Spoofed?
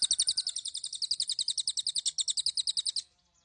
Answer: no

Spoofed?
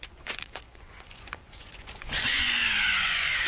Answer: yes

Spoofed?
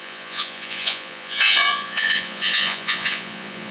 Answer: yes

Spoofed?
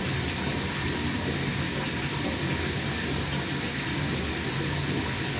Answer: no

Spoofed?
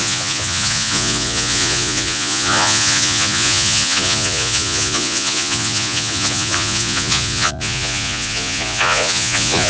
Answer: yes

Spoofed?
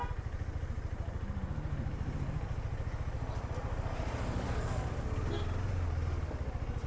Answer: no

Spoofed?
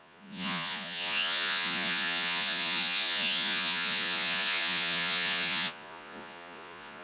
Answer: yes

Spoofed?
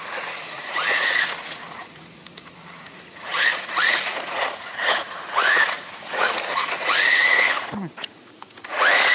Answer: yes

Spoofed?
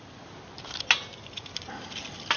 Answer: no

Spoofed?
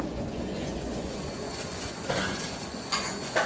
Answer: yes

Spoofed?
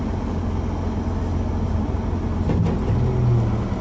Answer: no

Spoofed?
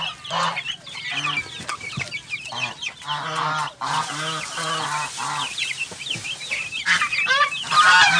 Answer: no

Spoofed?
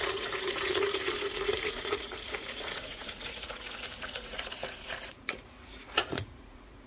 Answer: yes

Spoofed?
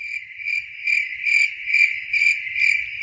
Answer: no